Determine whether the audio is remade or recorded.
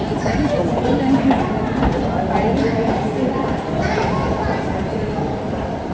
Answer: recorded